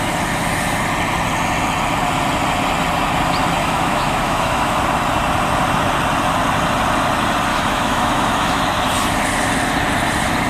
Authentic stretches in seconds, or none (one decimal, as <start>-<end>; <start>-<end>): 0.0-3.6; 4.8-7.5; 8.6-10.5